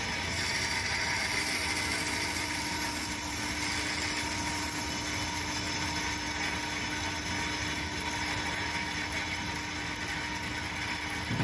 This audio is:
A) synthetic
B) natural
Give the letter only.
B